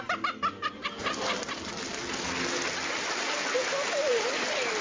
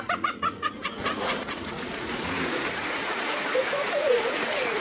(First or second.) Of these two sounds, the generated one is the second